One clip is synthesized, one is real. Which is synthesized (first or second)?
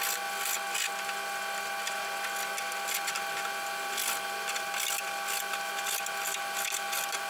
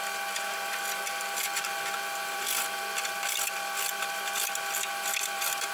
second